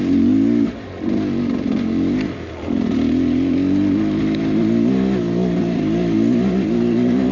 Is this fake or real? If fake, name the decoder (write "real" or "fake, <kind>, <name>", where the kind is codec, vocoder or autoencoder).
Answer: real